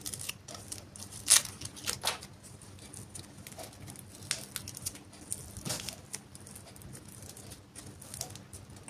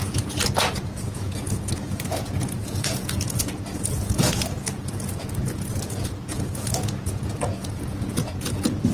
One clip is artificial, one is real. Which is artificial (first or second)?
second